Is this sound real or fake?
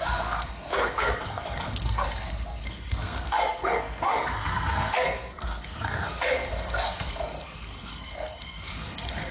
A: fake